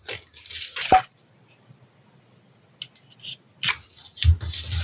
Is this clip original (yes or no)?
yes